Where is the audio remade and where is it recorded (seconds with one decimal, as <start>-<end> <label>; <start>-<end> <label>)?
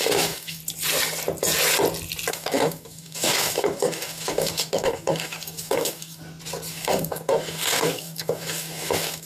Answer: 0.0-0.6 remade; 0.6-2.3 recorded; 2.3-6.2 remade; 6.2-6.7 recorded; 6.7-9.3 remade